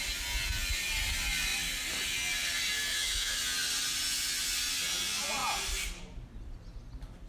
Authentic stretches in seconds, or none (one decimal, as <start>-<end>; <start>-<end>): 0.0-2.9; 3.4-7.3